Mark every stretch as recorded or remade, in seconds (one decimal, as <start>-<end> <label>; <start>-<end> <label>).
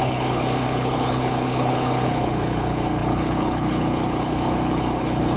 0.0-5.4 remade